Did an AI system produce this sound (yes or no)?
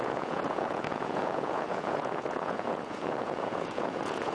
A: yes